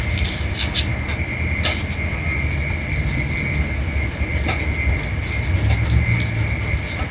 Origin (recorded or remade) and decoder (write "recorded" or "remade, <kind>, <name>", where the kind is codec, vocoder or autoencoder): recorded